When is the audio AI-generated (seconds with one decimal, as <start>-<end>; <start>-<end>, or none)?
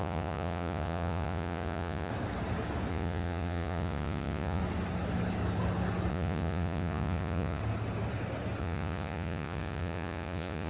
0.0-2.1; 2.9-4.6; 6.1-7.6; 8.6-10.7